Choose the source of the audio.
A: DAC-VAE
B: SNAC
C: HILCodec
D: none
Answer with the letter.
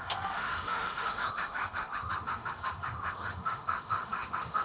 A